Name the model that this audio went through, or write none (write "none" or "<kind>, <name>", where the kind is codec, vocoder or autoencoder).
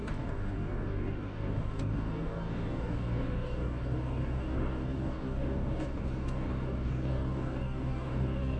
codec, DAC